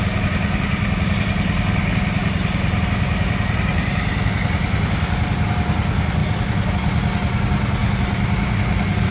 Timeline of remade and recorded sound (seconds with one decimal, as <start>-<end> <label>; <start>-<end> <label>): 0.0-6.2 remade; 6.2-6.7 recorded; 6.7-7.8 remade; 7.8-9.1 recorded